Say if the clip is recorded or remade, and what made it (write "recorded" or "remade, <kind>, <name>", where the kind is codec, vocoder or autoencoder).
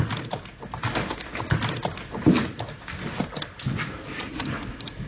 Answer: recorded